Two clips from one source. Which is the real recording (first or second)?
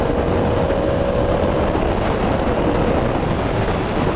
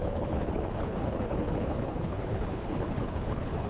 first